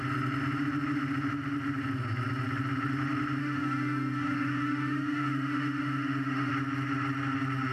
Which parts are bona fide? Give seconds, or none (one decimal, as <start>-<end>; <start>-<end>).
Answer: 0.0-3.4; 6.5-7.7